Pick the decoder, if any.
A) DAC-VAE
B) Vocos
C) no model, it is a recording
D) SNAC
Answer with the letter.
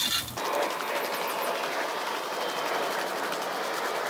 C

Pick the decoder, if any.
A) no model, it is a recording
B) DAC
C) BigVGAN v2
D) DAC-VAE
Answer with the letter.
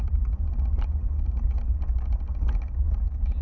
A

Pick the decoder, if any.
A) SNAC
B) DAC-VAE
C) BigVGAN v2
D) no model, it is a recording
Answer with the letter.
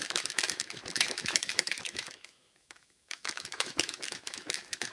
B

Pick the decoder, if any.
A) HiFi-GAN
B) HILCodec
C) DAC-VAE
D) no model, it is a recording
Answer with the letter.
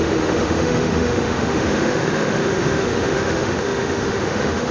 C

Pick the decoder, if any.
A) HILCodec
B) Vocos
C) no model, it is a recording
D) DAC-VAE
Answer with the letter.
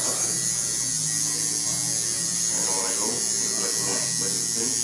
C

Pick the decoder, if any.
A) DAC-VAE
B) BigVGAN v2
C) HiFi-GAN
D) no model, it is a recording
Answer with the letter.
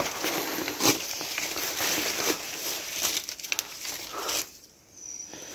D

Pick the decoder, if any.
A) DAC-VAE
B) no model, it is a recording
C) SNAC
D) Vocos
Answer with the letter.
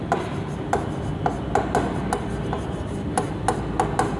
B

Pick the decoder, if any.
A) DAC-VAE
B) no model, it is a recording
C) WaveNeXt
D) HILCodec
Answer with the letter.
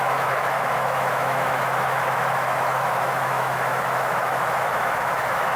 A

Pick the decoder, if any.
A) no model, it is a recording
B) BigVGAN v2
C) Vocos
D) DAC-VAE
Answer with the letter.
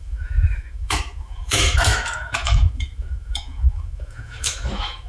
D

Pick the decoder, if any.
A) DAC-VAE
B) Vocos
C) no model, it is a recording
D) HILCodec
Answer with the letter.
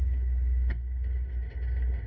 C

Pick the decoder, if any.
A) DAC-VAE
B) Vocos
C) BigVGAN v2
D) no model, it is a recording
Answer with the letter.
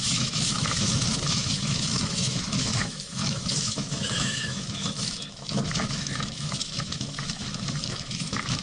A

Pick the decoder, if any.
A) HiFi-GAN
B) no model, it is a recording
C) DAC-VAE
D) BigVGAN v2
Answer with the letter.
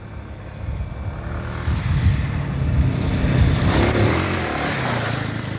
B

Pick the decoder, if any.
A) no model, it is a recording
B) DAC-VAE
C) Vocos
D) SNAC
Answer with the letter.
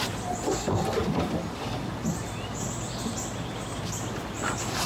A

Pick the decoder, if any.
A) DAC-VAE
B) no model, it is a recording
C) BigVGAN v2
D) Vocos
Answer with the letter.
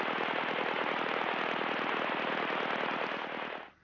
B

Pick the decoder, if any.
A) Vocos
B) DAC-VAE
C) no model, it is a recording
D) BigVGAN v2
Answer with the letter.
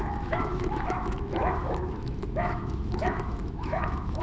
B